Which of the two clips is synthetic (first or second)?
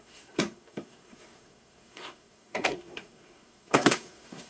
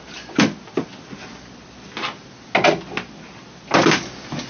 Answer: first